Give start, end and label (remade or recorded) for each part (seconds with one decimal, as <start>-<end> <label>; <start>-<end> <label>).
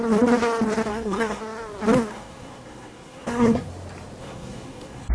0.0-0.9 recorded; 0.9-1.4 remade; 1.4-2.1 recorded; 2.1-3.7 remade; 3.7-4.2 recorded; 4.2-5.1 remade